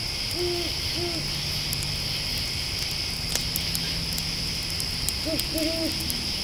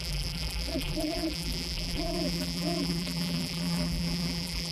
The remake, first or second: second